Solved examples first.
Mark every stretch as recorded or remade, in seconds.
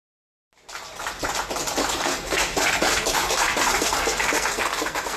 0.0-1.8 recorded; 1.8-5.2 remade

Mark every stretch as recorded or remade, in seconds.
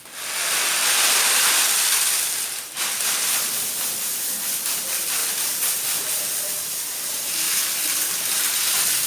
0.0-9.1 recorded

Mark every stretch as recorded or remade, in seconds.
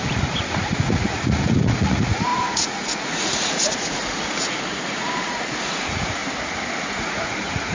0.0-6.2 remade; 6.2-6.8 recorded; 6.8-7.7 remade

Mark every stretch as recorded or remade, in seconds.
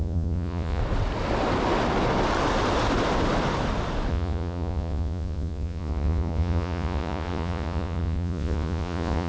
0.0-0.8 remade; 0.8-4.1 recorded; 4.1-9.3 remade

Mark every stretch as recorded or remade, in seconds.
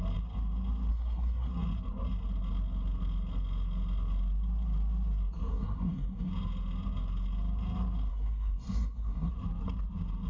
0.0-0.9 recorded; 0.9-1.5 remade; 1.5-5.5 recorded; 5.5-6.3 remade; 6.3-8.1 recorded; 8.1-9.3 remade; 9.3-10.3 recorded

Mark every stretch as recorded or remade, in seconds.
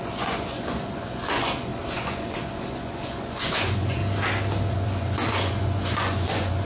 0.0-4.0 remade; 4.0-4.7 recorded; 4.7-6.6 remade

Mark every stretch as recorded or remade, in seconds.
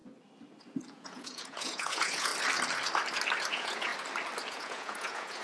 0.0-0.9 recorded; 0.9-2.3 remade; 2.3-3.5 recorded; 3.5-3.9 remade; 3.9-4.5 recorded; 4.5-5.4 remade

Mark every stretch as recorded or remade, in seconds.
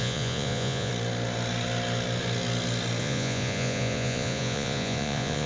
0.0-0.9 remade; 0.9-3.0 recorded; 3.0-5.5 remade